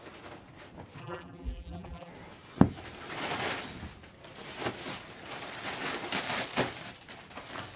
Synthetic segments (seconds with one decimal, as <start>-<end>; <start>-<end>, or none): 1.0-2.1